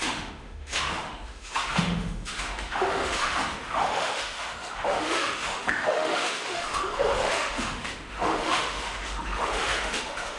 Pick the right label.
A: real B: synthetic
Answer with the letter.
B